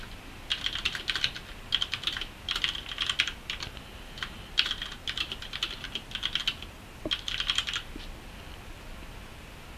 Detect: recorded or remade recorded